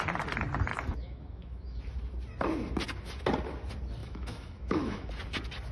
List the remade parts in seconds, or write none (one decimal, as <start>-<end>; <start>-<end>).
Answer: 0.7-1.8; 4.0-5.1